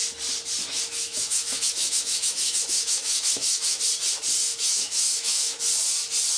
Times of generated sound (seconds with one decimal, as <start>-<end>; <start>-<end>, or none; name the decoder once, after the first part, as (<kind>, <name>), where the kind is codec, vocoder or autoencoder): 0.6-3.8 (autoencoder, DAC-VAE); 4.5-5.6